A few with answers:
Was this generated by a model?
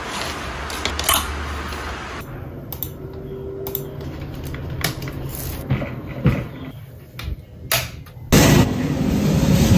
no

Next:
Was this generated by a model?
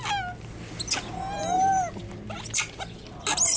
no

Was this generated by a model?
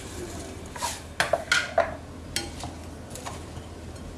no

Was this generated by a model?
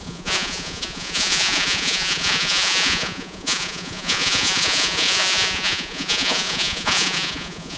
yes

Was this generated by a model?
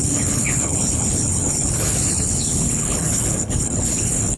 yes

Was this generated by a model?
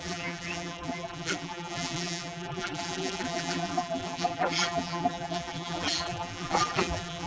yes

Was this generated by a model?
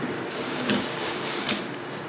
yes